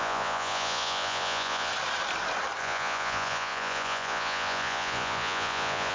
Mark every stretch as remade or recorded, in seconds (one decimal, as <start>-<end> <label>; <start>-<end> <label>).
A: 0.0-1.7 remade; 1.7-2.6 recorded; 2.6-5.9 remade